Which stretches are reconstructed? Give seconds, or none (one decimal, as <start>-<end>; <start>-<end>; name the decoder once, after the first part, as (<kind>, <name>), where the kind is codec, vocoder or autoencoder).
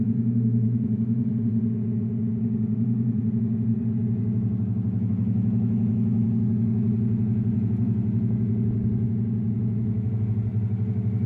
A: 0.0-10.5 (vocoder, Vocos)